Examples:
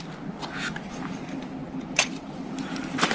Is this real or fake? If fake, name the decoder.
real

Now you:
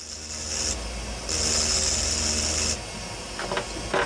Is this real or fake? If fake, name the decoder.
real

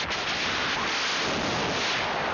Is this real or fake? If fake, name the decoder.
real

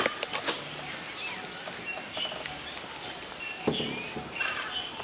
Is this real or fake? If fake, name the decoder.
real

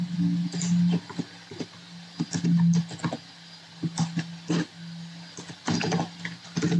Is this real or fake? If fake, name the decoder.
real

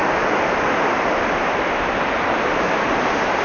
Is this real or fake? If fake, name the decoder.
real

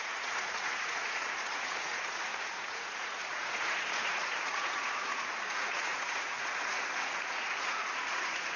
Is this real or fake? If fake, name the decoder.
fake, vocoder, Vocos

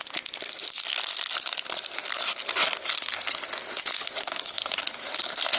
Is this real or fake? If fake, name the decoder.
real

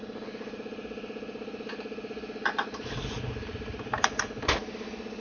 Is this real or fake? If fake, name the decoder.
real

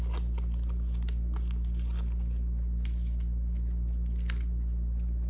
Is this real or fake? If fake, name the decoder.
real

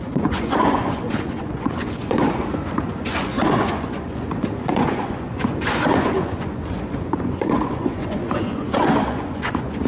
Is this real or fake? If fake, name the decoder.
fake, vocoder, Vocos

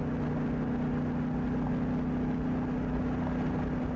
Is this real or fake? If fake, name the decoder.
real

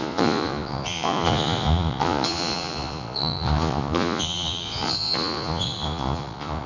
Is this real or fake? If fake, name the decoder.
fake, vocoder, Vocos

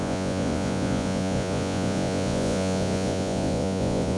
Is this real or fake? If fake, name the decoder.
fake, vocoder, Vocos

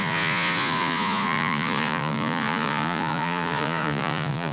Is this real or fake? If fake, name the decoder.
fake, vocoder, Vocos